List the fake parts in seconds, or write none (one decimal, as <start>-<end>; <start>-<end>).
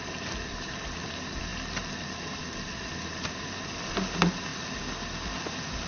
none